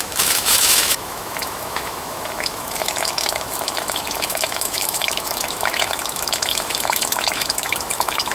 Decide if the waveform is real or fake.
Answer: fake